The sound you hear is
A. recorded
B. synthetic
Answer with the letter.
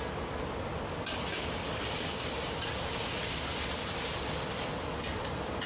A